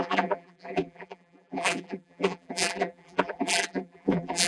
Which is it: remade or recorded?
remade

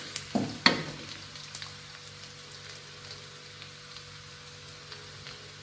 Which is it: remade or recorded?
recorded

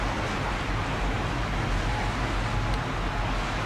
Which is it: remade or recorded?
recorded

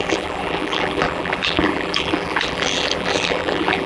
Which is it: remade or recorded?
remade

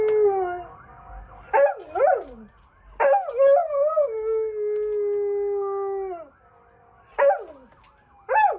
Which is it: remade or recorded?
recorded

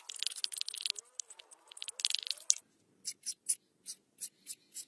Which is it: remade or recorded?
recorded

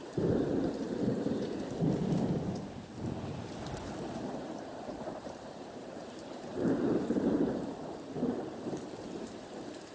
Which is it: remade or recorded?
remade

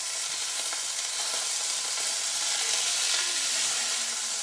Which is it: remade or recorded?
recorded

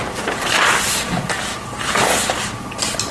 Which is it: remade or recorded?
remade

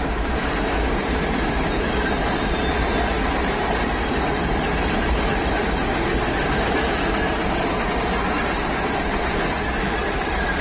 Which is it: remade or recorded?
remade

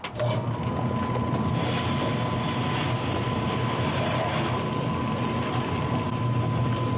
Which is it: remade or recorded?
recorded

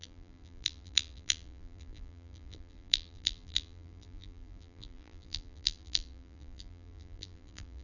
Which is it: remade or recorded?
remade